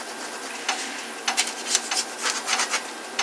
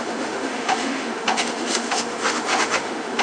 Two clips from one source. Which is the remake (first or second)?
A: second